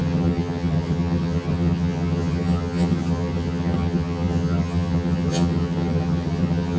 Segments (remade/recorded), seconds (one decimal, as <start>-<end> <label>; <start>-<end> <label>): 0.0-6.8 remade